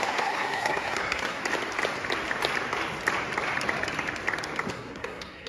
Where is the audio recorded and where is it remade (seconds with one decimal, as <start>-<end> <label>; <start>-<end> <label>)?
0.0-1.4 remade; 1.4-4.7 recorded; 4.7-5.5 remade